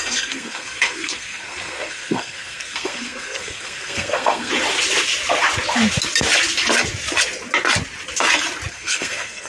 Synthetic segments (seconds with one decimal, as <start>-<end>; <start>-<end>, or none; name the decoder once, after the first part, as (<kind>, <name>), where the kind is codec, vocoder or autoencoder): 0.0-4.5 (codec, SNAC); 8.7-9.5